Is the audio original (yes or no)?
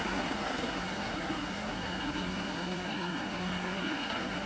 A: no